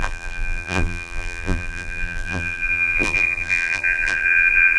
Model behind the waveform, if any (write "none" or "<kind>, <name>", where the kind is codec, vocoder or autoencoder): vocoder, BigVGAN v2